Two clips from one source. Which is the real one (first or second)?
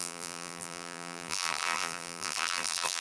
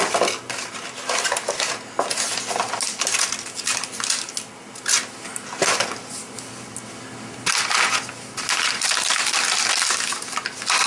second